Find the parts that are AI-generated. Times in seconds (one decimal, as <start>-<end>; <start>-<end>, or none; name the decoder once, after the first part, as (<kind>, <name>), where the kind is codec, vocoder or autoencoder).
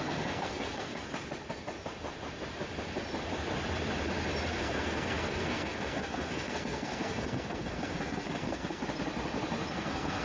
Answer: 0.0-1.0 (codec, SNAC); 4.5-8.8; 9.7-10.2